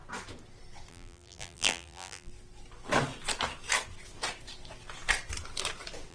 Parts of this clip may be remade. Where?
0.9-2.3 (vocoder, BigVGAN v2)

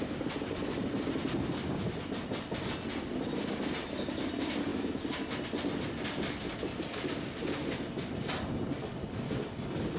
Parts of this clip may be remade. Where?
none

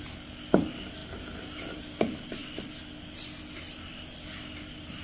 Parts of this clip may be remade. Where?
none

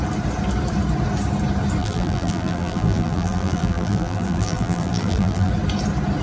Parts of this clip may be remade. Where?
1.8-5.5 (vocoder, BigVGAN v2)

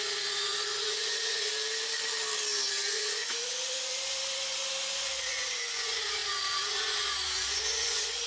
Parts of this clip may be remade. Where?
0.0-1.5 (vocoder, Vocos); 2.9-8.3

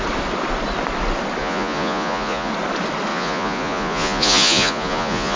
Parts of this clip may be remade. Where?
1.4-2.5 (vocoder, Vocos); 3.1-5.4

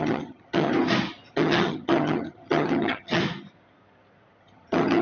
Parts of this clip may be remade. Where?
0.0-0.7 (vocoder, HiFi-GAN); 1.3-3.2; 4.4-5.0